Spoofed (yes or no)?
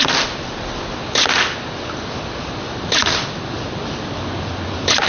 no